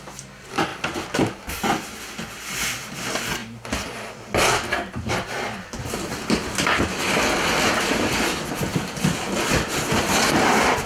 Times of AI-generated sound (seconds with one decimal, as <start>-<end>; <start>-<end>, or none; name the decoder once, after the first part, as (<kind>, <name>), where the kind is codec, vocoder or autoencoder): none